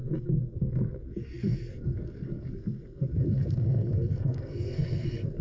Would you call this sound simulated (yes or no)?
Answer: yes